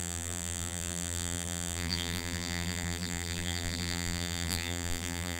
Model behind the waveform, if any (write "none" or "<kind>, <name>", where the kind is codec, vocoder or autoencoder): vocoder, BigVGAN v2